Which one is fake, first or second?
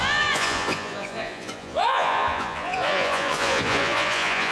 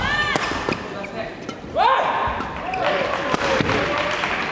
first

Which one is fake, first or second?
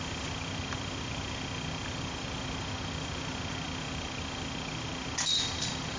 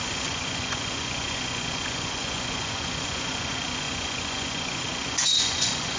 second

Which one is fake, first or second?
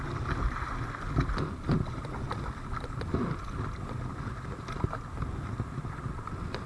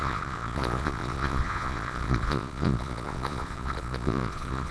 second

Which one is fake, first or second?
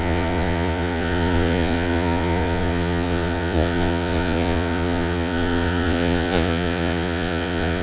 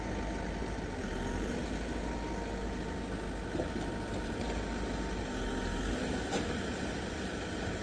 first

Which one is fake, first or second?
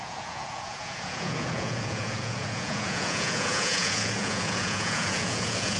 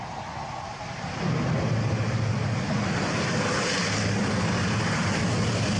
first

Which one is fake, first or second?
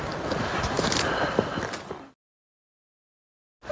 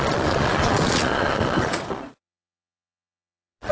second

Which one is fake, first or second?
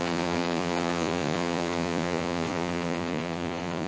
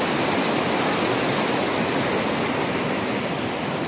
first